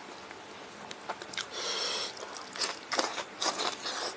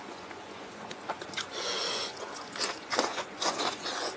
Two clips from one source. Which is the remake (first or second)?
second